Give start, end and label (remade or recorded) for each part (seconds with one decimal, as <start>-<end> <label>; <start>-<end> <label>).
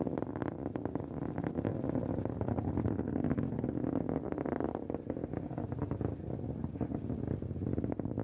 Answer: 0.0-8.2 recorded